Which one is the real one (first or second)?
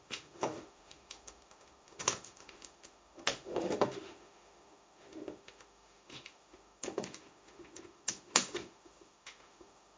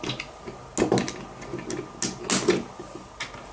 second